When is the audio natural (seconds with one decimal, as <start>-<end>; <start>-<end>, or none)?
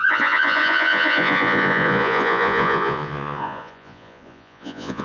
none